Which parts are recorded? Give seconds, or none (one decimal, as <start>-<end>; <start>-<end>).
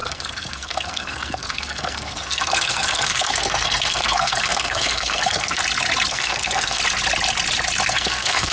5.6-6.1; 6.8-7.9